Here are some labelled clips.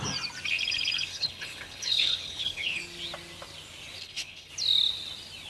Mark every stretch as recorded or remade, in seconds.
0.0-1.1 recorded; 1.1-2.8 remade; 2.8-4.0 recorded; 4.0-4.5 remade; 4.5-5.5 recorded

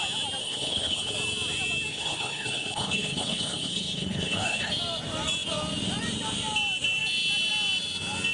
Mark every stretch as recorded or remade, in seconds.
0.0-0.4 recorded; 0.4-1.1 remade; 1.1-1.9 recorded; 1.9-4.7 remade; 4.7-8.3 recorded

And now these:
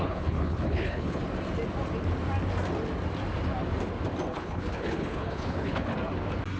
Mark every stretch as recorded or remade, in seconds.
0.0-1.2 remade; 1.2-4.3 recorded; 4.3-5.9 remade; 5.9-6.6 recorded

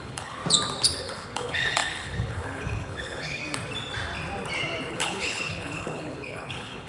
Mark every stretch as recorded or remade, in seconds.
0.0-0.4 remade; 0.4-1.0 recorded; 1.0-3.4 remade; 3.4-4.9 recorded; 4.9-6.9 remade

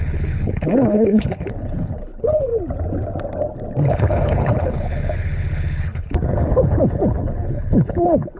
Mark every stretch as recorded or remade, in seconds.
0.0-2.5 remade; 2.5-3.9 recorded; 3.9-8.4 remade

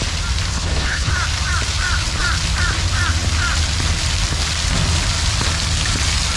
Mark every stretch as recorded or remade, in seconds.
0.0-0.5 recorded; 0.5-1.1 remade; 1.1-6.4 recorded

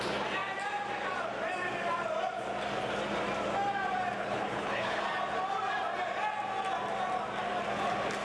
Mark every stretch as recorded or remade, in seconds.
0.0-4.2 recorded; 4.2-5.0 remade; 5.0-8.2 recorded